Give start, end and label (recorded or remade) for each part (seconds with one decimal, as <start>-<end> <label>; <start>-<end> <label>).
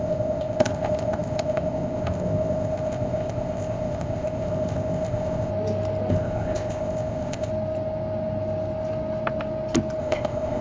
0.0-5.5 remade; 5.5-6.1 recorded; 6.1-7.5 remade; 7.5-10.0 recorded; 10.0-10.6 remade